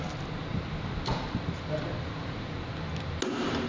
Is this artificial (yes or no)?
no